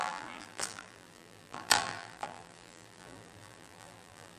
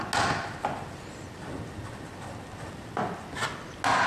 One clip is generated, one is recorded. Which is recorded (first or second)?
second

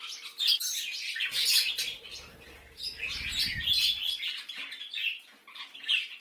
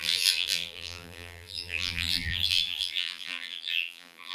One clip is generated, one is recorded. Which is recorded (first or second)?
first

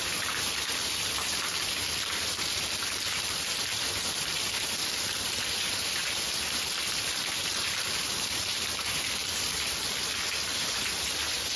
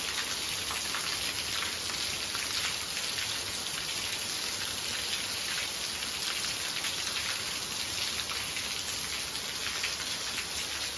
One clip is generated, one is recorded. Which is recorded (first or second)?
second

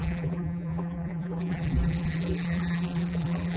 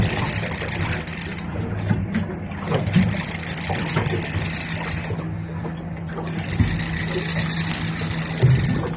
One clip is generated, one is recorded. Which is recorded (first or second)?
second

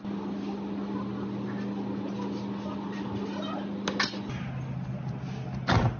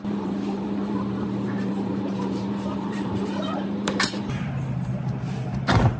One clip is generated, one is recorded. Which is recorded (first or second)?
first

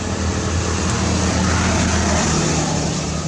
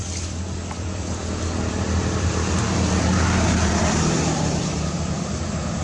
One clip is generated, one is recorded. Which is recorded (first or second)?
first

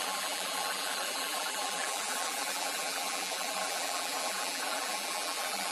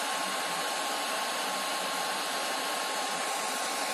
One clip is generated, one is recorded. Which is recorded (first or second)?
second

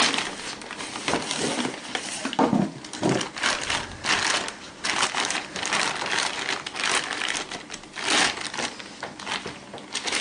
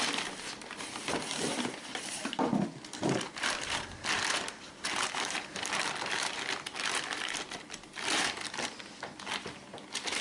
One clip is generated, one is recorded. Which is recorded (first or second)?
first